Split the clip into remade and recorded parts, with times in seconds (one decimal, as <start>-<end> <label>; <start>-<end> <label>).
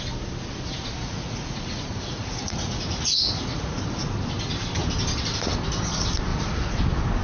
0.0-1.0 recorded; 1.0-3.8 remade; 3.8-6.3 recorded; 6.3-6.8 remade; 6.8-7.2 recorded